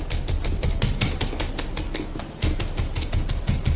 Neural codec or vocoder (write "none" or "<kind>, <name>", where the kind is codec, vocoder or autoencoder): none